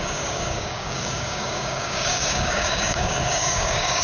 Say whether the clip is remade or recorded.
remade